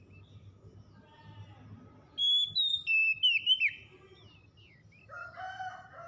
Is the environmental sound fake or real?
real